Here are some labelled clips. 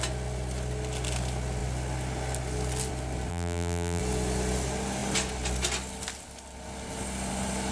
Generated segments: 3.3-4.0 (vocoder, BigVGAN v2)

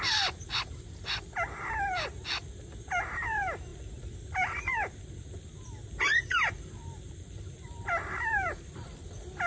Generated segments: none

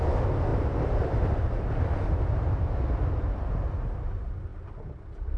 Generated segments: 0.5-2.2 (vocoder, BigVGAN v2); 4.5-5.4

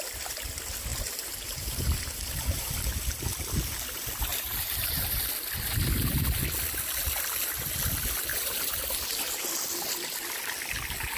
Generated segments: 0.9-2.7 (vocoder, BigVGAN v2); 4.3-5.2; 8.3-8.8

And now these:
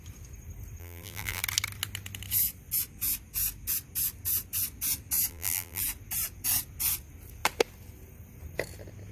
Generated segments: 0.8-1.4 (vocoder, BigVGAN v2); 5.3-5.8

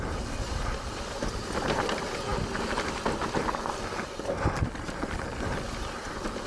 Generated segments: none

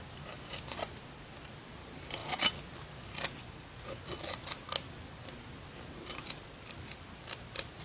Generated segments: none